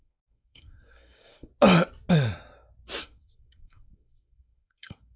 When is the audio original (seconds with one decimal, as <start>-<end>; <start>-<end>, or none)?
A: 1.5-3.0